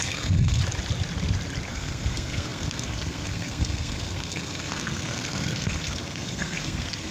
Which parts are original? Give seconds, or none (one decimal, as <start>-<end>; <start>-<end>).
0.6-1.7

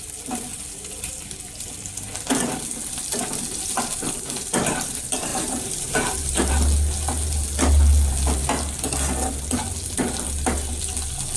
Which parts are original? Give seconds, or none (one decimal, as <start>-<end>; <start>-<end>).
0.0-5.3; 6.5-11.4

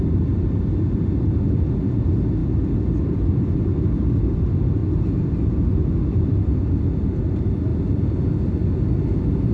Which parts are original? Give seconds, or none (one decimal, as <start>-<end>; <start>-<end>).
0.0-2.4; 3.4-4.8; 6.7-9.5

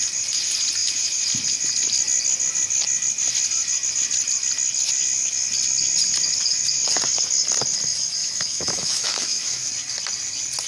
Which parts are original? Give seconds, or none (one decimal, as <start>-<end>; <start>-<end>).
0.0-8.2; 9.7-10.7

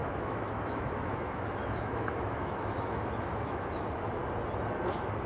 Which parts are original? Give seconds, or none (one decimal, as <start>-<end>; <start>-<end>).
4.2-5.3